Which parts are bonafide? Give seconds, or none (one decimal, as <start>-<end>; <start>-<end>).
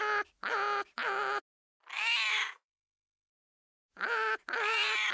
0.0-2.3; 3.3-5.1